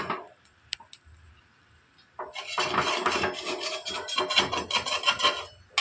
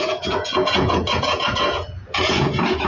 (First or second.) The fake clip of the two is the second